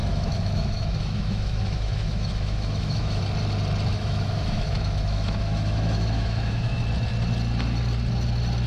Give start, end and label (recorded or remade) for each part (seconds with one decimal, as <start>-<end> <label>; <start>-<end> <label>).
0.0-3.2 remade; 3.2-3.9 recorded; 3.9-6.8 remade; 6.8-8.7 recorded